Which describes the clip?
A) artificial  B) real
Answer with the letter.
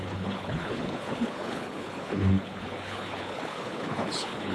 A